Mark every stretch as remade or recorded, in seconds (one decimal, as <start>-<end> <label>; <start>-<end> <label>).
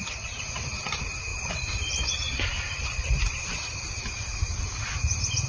0.0-5.5 recorded